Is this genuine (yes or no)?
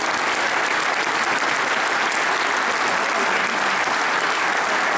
yes